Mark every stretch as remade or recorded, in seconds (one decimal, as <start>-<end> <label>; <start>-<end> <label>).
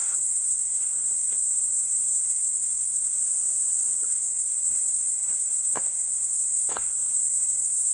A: 0.0-3.2 remade; 3.2-4.1 recorded; 4.1-7.9 remade